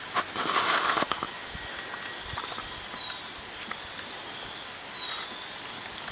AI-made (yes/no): no